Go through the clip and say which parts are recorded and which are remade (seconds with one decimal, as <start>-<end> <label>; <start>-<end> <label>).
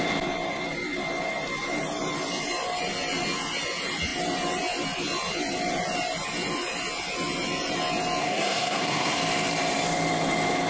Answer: 0.0-8.2 recorded; 8.2-9.2 remade; 9.2-10.7 recorded